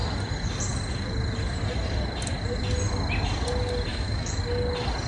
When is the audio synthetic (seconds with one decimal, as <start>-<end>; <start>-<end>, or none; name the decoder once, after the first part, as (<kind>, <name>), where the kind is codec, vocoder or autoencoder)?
3.9-4.4 (autoencoder, DAC-VAE)